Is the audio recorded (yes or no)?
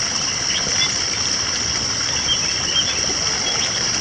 yes